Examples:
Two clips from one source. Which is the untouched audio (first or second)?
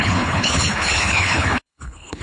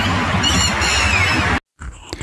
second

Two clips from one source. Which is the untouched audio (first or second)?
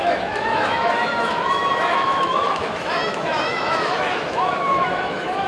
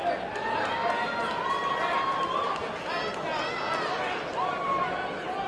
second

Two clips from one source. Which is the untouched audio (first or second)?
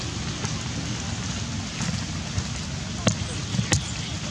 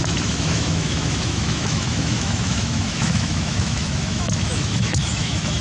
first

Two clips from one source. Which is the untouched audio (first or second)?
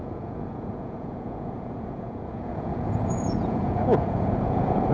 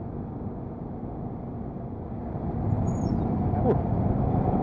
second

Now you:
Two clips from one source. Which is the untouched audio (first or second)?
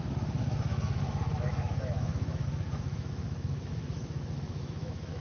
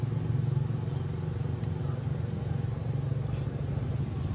second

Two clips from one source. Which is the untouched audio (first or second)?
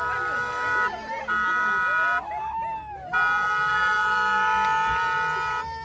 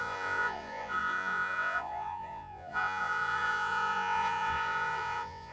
first